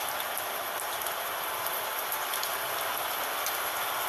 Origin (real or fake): real